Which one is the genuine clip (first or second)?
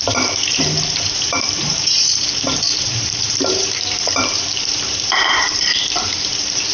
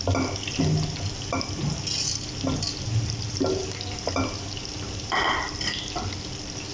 second